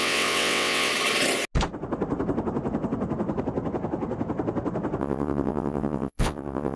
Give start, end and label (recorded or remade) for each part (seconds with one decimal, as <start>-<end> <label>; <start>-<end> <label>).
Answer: 0.0-0.9 remade; 0.9-5.0 recorded; 5.0-6.8 remade